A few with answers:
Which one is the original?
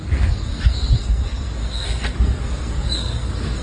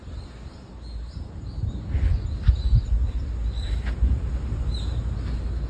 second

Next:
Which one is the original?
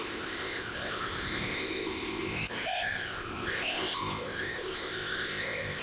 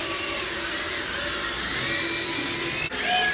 second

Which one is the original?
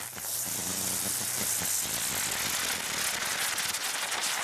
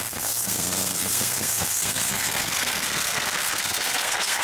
first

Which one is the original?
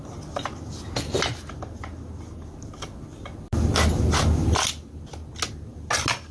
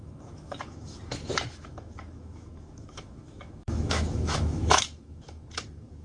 first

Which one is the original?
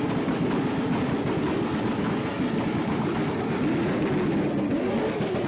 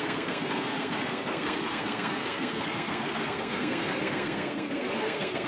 first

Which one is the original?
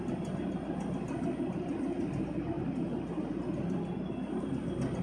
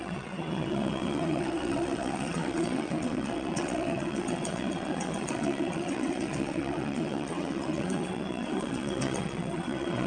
first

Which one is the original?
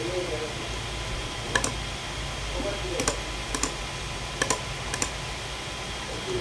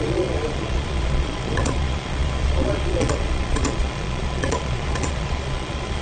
first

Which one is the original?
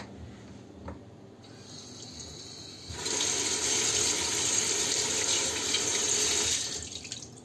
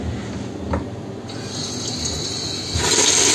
second